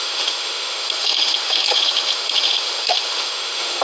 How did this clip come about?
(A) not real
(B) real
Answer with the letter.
A